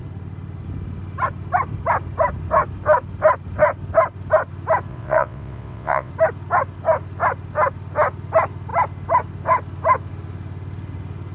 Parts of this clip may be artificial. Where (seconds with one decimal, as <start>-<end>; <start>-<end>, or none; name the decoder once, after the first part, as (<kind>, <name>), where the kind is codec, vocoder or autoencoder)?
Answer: 4.9-6.1 (vocoder, WaveNeXt)